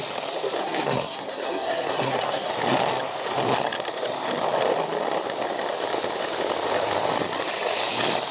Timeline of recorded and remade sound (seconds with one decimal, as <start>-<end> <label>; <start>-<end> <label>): 0.0-0.6 recorded; 0.6-2.5 remade; 2.5-8.3 recorded